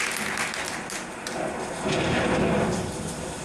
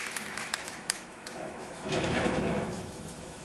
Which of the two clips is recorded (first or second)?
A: first